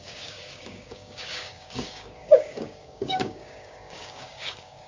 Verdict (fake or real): fake